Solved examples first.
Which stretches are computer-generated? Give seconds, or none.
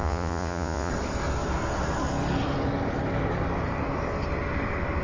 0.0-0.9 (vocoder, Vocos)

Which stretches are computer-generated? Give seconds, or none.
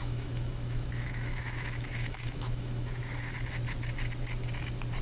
0.0-3.0 (autoencoder, DAC-VAE)